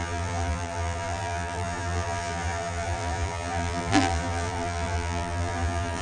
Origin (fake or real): fake